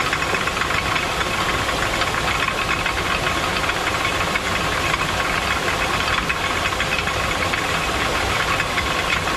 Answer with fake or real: real